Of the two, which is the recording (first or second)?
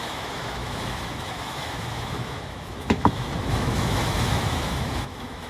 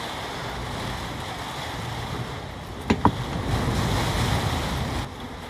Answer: second